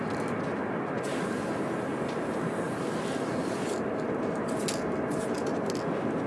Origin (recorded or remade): recorded